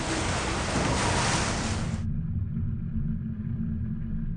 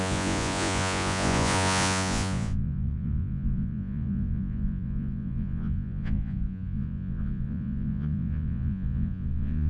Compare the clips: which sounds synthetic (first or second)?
second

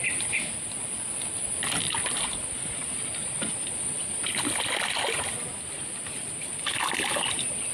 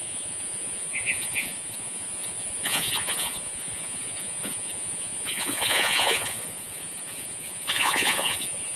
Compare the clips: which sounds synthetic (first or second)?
second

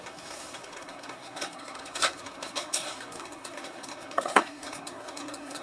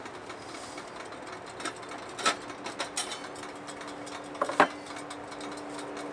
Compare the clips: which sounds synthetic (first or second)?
first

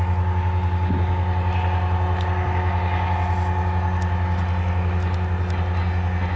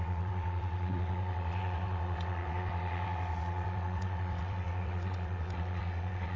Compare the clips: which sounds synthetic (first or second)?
second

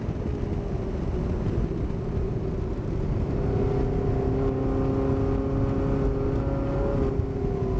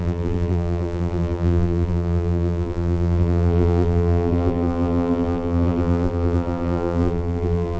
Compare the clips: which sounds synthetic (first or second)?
second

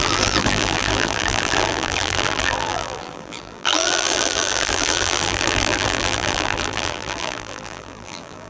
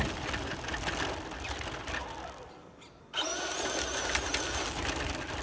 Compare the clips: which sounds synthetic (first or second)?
first